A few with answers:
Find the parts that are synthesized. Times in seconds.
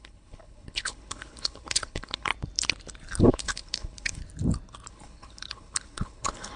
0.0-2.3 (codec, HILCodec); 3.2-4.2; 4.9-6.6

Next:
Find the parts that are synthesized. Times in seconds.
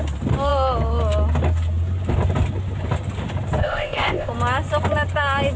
3.6-4.3 (codec, ZipCodec)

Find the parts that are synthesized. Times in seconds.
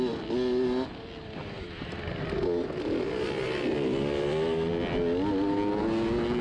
0.9-4.7 (vocoder, BigVGAN v2)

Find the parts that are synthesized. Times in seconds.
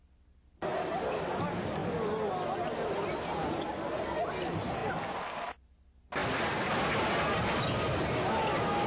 6.2-6.7 (vocoder, BigVGAN v2)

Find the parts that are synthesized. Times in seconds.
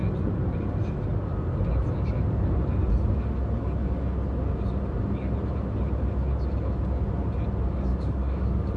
7.9-8.8 (codec, DAC)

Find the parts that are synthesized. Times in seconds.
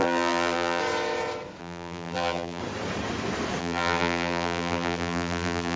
0.0-0.8 (vocoder, BigVGAN v2); 1.6-2.6; 3.6-5.8